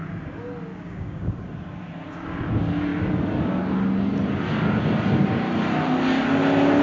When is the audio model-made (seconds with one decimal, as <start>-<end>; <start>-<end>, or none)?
0.7-1.4